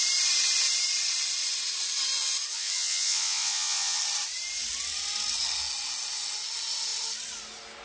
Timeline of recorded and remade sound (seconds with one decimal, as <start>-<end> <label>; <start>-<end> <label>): 0.0-2.5 recorded; 2.5-4.0 remade; 4.0-7.8 recorded